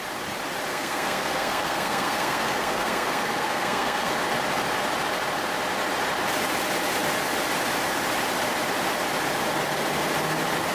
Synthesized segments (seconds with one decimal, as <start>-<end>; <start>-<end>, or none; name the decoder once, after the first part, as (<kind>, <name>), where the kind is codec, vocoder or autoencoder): 0.7-4.1 (codec, SNAC)

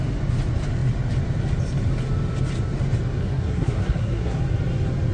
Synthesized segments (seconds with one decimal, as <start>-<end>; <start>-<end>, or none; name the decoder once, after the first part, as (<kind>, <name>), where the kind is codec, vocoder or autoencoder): 3.2-4.4 (codec, SNAC)

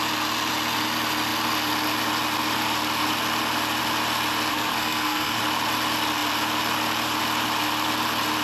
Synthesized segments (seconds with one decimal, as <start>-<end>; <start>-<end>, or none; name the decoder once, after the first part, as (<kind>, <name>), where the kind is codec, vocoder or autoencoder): 4.5-5.4 (codec, SNAC)

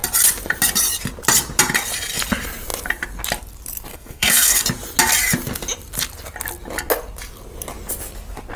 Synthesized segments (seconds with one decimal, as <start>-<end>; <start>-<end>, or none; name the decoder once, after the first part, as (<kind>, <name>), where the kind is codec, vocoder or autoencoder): 3.9-4.6 (codec, SNAC)

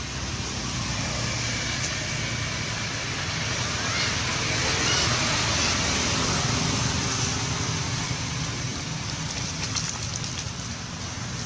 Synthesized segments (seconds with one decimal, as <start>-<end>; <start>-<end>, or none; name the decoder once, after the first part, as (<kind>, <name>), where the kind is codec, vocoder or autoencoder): none

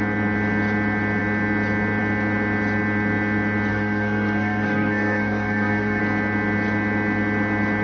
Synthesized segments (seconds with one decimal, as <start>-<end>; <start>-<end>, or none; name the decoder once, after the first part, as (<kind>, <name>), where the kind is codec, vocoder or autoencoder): 3.7-6.0 (codec, SNAC)

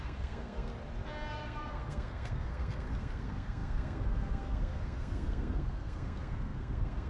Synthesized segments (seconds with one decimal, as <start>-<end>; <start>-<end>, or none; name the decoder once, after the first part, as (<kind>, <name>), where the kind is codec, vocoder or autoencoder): 0.0-0.7 (codec, SNAC); 1.3-7.1